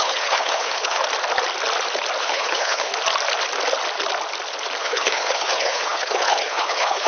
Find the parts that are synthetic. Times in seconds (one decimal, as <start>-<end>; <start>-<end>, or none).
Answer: 0.0-1.0; 2.2-2.9; 4.8-7.1